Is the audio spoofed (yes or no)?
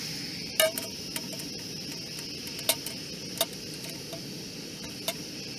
no